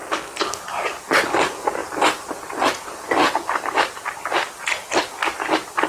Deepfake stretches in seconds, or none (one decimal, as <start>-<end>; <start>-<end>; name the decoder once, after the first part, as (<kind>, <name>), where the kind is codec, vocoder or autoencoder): 1.8-2.4 (vocoder, BigVGAN v2)